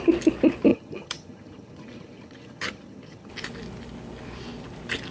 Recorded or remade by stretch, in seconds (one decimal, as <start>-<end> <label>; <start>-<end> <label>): 0.0-0.7 recorded; 0.7-3.3 remade; 3.3-5.1 recorded